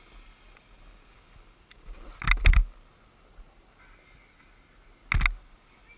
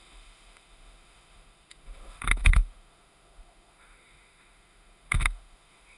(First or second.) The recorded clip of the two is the first